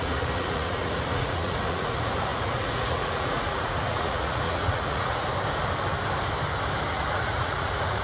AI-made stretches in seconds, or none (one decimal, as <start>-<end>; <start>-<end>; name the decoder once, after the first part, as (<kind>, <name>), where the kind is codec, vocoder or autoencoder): 0.0-5.3 (vocoder, Vocos); 6.9-8.0